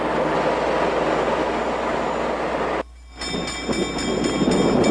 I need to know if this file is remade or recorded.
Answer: recorded